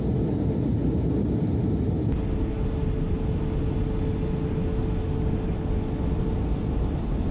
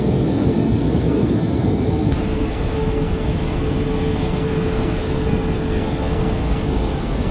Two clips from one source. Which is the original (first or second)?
first